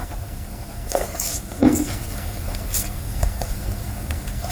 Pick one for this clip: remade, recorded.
remade